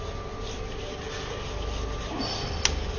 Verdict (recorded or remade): recorded